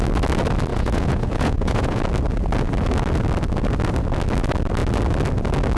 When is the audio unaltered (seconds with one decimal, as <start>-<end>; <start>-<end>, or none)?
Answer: 0.0-0.7; 2.0-5.8